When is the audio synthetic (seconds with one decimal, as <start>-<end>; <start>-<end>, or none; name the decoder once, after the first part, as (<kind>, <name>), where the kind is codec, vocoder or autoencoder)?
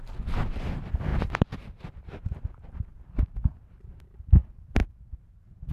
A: 1.1-4.2 (vocoder, BigVGAN v2); 4.8-5.7